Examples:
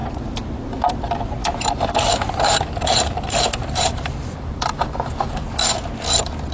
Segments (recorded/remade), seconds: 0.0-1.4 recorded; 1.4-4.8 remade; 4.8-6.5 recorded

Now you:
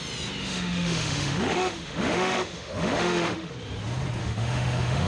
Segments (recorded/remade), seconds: 0.0-0.4 recorded; 0.4-3.5 remade; 3.5-4.2 recorded; 4.2-5.1 remade